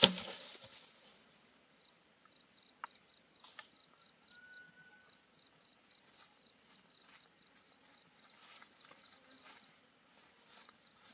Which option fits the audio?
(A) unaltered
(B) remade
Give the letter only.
A